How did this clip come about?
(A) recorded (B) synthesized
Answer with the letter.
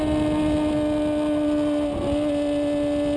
A